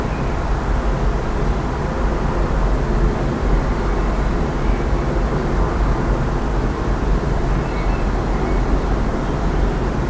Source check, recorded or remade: recorded